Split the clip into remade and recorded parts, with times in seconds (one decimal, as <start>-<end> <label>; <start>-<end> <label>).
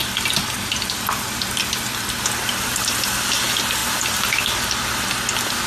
0.0-2.2 remade; 2.2-3.8 recorded; 3.8-4.4 remade; 4.4-5.7 recorded